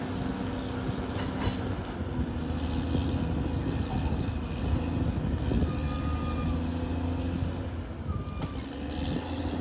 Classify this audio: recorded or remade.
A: recorded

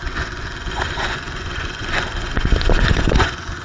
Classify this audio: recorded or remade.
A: remade